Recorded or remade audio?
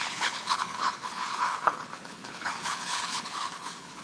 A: remade